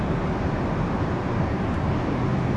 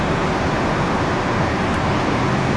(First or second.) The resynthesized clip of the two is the first